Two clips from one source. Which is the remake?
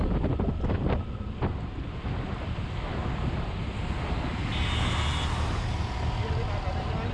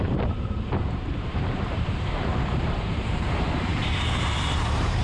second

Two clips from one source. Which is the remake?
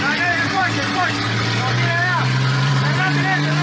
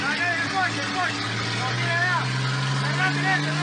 first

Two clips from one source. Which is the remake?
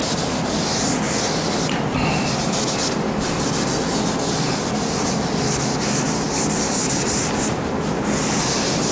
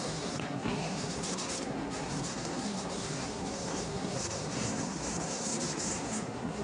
second